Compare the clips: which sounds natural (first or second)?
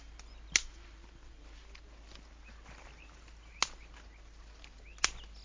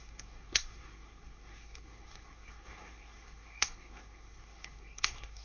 first